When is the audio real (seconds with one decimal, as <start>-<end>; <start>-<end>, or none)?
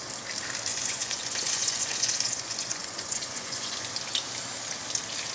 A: 0.0-0.7; 3.9-5.3